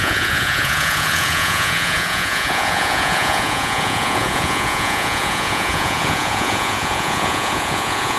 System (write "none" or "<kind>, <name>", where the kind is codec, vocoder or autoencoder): vocoder, Vocos